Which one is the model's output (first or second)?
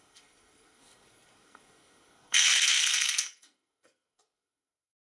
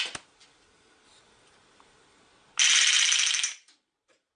first